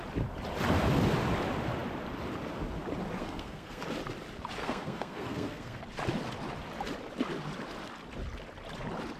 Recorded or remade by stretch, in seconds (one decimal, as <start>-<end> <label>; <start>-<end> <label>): 0.0-3.2 recorded; 3.2-3.8 remade; 3.8-4.6 recorded; 4.6-5.8 remade; 5.8-9.2 recorded